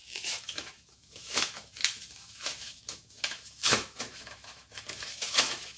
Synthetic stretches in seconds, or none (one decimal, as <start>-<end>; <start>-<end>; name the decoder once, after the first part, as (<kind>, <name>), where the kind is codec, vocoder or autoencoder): 0.0-5.8 (autoencoder, DAC-VAE)